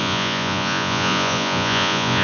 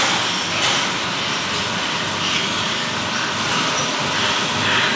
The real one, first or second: second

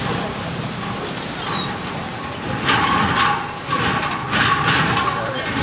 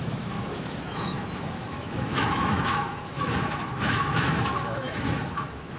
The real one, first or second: first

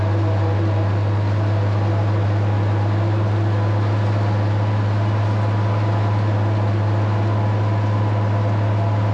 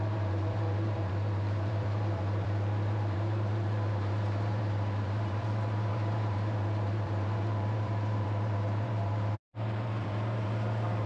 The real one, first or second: first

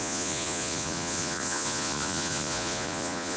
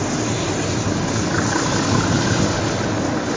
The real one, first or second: second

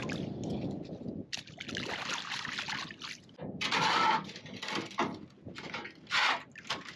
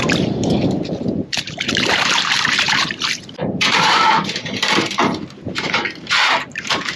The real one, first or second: first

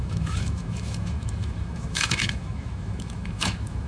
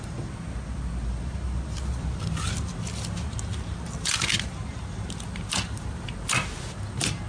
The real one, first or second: second